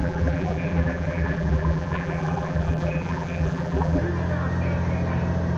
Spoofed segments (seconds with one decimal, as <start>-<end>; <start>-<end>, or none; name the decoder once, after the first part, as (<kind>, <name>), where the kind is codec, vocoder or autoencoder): 0.0-4.0 (vocoder, BigVGAN v2)